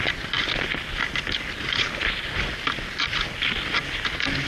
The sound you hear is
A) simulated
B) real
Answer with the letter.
B